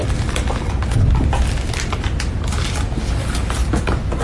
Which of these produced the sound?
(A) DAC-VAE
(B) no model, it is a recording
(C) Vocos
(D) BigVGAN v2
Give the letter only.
B